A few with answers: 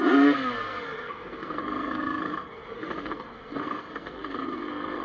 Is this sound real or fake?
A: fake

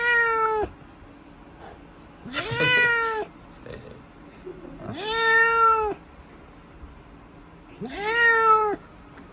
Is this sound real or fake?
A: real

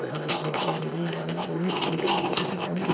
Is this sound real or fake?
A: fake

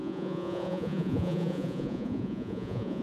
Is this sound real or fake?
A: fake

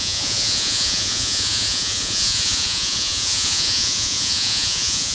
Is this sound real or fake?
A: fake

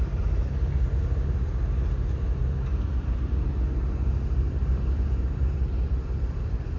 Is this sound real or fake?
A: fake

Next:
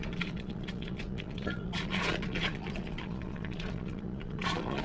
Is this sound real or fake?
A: fake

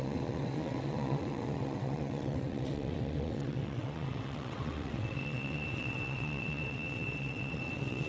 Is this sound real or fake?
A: fake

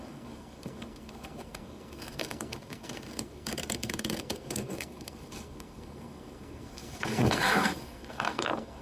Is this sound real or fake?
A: fake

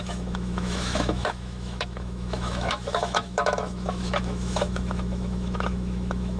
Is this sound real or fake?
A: fake